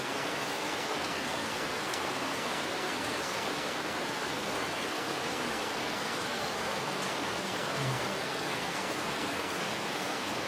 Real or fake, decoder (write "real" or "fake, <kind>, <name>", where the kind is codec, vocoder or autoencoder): fake, codec, SNAC